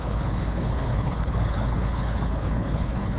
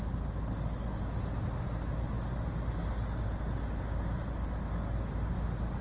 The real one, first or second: second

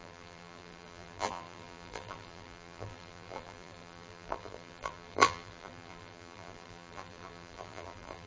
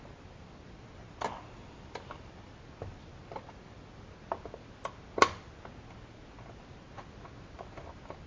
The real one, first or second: second